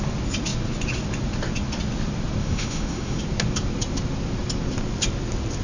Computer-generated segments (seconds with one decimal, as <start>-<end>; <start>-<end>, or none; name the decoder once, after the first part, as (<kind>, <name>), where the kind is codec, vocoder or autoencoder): 2.4-3.2 (autoencoder, DAC-VAE)